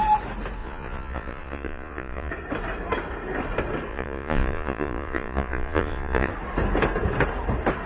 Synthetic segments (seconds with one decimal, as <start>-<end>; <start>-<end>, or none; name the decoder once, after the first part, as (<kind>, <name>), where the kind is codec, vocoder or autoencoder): 0.6-2.3 (vocoder, Vocos); 3.9-6.3